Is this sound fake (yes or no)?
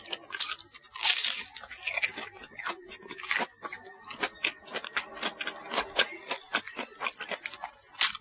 no